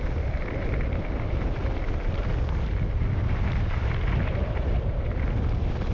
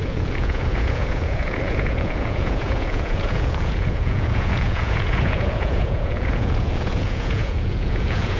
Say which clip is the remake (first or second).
second